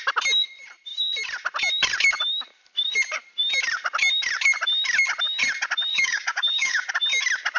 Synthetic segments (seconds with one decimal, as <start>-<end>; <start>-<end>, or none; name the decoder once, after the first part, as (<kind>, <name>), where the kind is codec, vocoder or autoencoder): 5.9-6.9 (codec, DAC)